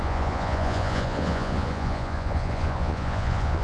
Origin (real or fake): fake